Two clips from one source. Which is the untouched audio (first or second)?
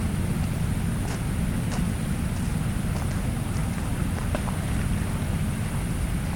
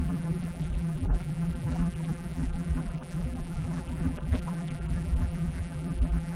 first